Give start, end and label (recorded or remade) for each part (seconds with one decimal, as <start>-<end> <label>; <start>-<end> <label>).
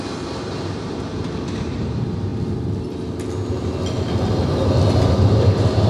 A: 0.0-2.3 remade; 2.3-5.1 recorded; 5.1-5.9 remade